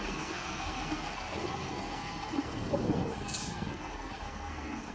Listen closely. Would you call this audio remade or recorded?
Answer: remade